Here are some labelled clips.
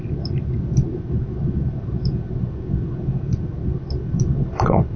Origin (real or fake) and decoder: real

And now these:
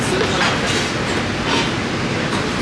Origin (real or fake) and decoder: real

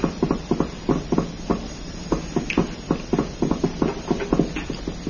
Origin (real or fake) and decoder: real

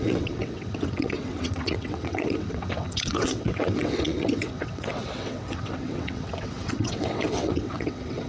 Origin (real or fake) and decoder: fake, vocoder, WaveNeXt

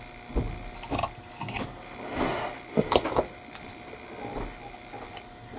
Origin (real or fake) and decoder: real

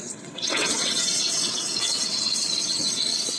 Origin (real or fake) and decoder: fake, vocoder, WaveNeXt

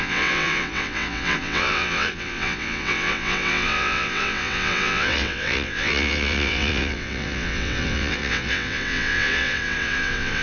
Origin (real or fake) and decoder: fake, vocoder, WaveNeXt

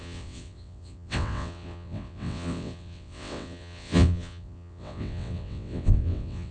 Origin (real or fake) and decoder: fake, vocoder, WaveNeXt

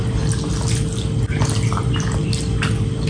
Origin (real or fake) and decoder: real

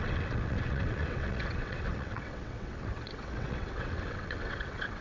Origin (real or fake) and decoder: fake, vocoder, WaveNeXt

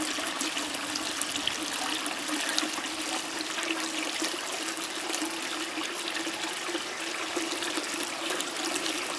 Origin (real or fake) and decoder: real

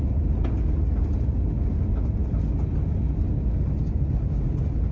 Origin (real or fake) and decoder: real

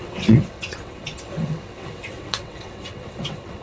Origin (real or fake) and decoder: fake, vocoder, WaveNeXt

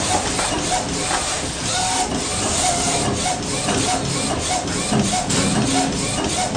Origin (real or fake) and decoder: real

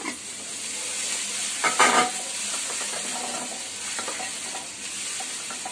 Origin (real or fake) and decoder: real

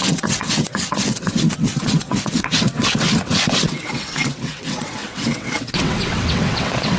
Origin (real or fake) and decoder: fake, vocoder, WaveNeXt